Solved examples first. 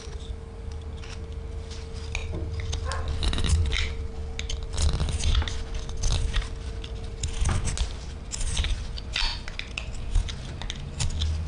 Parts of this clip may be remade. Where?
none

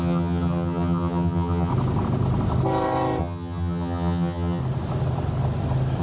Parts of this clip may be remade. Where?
0.0-1.7 (vocoder, HiFi-GAN); 3.2-4.6

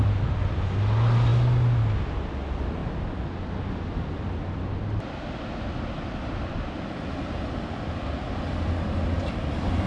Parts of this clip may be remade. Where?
none

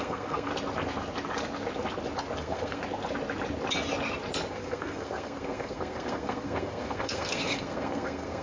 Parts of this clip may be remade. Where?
0.0-0.5 (codec, SNAC); 2.4-2.8; 4.5-8.4

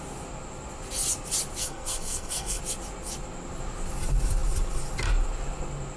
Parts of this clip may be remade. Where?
1.6-2.6 (codec, SNAC)

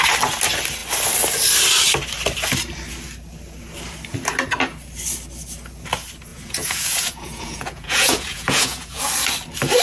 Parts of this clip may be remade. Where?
6.3-9.0 (vocoder, Vocos)

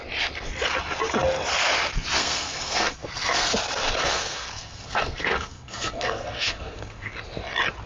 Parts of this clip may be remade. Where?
2.2-3.5 (codec, SNAC); 4.0-7.1

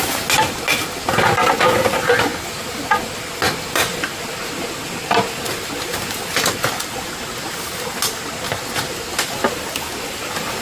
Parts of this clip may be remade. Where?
none